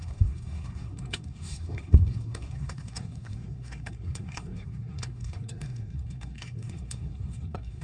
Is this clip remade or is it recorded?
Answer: remade